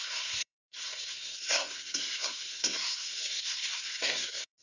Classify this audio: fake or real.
fake